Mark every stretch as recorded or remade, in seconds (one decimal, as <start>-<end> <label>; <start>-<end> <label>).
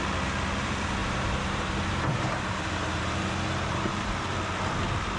0.0-1.0 recorded; 1.0-4.1 remade; 4.1-5.2 recorded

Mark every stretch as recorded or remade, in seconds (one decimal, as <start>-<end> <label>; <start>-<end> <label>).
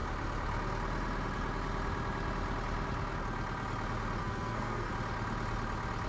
0.0-4.2 recorded; 4.2-4.9 remade; 4.9-6.1 recorded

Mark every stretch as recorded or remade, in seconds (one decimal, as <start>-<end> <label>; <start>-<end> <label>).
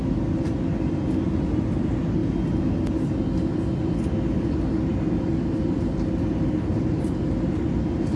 0.0-8.2 recorded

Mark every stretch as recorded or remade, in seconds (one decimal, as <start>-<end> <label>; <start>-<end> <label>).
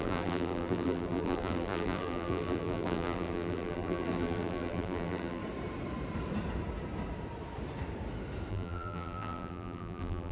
0.0-5.4 remade; 5.4-8.5 recorded; 8.5-10.3 remade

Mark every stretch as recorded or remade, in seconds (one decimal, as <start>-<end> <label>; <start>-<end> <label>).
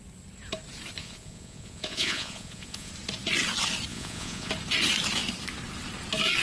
0.0-1.0 recorded; 1.0-2.9 remade; 2.9-3.9 recorded; 3.9-4.5 remade; 4.5-6.4 recorded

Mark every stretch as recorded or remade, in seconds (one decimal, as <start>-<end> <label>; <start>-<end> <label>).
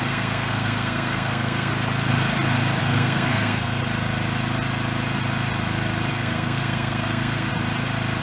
0.0-1.7 remade; 1.7-2.8 recorded; 2.8-3.8 remade; 3.8-6.1 recorded; 6.1-7.5 remade; 7.5-8.2 recorded